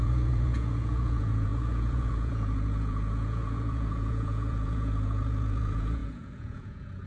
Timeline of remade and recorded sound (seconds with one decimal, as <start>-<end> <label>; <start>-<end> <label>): 0.0-7.1 remade